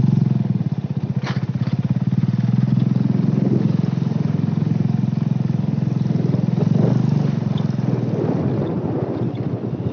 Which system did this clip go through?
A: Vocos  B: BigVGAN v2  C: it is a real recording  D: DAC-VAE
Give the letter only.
C